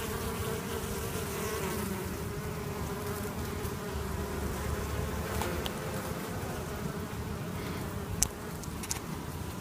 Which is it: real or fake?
fake